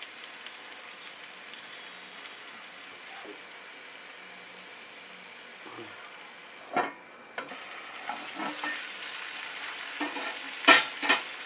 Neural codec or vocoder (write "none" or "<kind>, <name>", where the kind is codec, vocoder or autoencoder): none